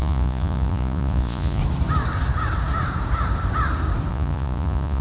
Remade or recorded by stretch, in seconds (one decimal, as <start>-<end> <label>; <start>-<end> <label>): 0.0-1.6 remade; 1.6-4.1 recorded; 4.1-5.0 remade